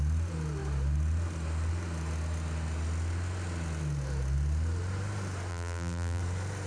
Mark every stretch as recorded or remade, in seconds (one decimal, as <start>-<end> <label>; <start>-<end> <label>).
0.0-5.5 recorded; 5.5-6.2 remade; 6.2-6.7 recorded